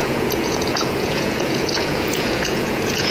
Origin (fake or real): fake